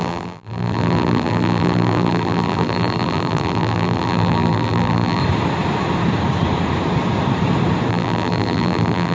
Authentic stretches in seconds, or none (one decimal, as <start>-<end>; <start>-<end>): 5.2-7.9